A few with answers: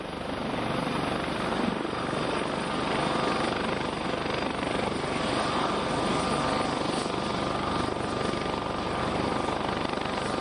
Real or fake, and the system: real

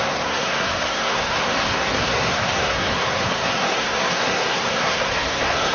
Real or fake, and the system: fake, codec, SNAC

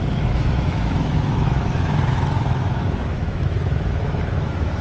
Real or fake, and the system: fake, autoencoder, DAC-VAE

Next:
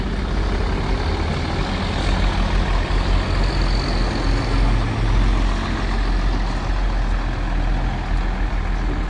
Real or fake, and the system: real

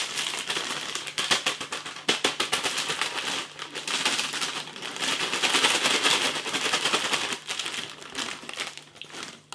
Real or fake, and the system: real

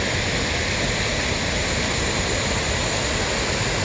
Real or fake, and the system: real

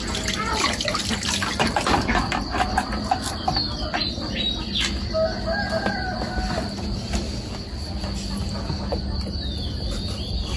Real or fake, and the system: real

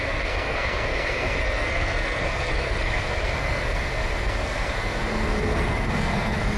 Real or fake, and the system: fake, codec, SNAC